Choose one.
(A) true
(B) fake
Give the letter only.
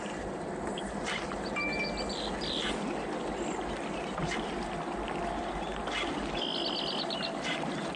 A